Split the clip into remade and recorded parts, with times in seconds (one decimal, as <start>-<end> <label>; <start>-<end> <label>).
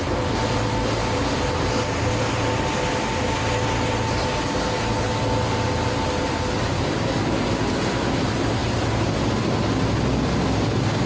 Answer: 0.0-11.1 recorded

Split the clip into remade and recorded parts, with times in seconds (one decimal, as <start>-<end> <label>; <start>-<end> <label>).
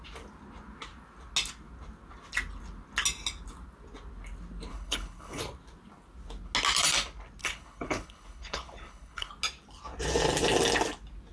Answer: 0.0-4.7 recorded; 4.7-5.4 remade; 5.4-7.4 recorded; 7.4-9.3 remade; 9.3-11.3 recorded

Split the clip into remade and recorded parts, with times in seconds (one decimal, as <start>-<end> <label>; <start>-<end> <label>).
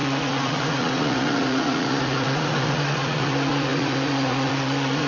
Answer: 0.0-5.1 remade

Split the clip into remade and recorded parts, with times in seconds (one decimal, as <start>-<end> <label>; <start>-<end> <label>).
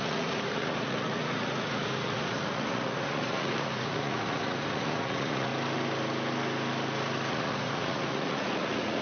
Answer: 0.0-5.5 remade; 5.5-7.3 recorded; 7.3-9.0 remade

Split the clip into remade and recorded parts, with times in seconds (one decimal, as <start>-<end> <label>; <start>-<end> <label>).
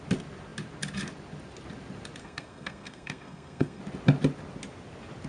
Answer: 0.0-2.2 recorded; 2.2-3.8 remade; 3.8-5.3 recorded